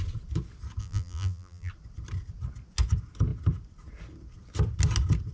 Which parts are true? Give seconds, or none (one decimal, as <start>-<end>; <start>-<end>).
0.0-0.8; 1.7-5.3